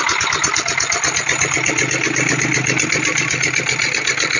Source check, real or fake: real